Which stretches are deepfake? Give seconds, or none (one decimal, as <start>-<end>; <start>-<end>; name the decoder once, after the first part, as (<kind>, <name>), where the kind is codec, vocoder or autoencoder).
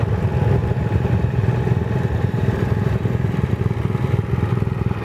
0.6-3.6 (vocoder, BigVGAN v2)